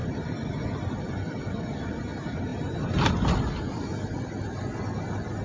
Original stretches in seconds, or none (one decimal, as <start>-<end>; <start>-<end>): 0.0-5.4